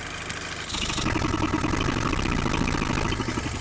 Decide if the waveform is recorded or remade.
recorded